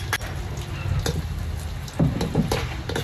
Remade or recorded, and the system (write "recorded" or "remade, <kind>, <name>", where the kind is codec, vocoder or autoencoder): recorded